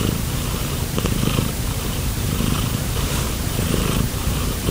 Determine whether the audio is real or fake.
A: fake